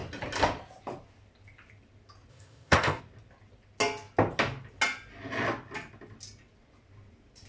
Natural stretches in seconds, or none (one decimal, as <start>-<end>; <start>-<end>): 0.0-2.3; 3.0-7.5